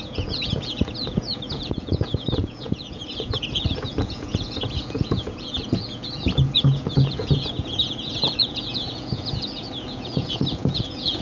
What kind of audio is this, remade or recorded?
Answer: remade